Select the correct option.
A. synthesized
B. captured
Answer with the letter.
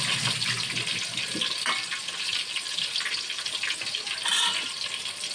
B